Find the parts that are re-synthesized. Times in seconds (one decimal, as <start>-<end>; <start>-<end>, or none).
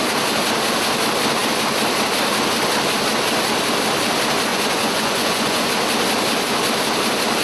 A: 4.5-5.7